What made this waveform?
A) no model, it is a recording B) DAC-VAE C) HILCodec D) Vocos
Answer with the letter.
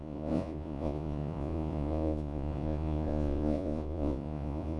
D